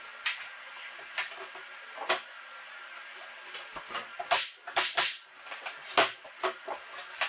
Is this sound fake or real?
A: real